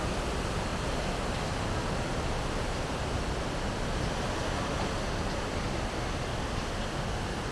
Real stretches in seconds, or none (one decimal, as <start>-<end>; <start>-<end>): 0.0-7.5